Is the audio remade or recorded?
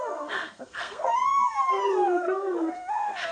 remade